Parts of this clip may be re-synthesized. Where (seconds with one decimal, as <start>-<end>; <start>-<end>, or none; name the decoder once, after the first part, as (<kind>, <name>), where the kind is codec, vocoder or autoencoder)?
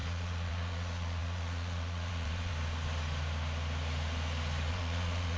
0.0-2.5 (vocoder, Vocos); 4.7-5.4